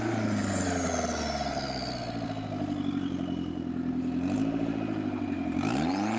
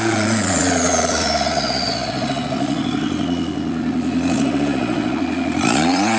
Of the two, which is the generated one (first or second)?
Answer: second